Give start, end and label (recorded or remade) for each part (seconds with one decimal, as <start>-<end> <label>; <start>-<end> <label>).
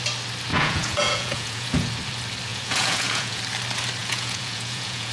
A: 0.0-0.5 recorded; 0.5-1.9 remade; 1.9-2.5 recorded; 2.5-3.4 remade; 3.4-4.0 recorded; 4.0-5.1 remade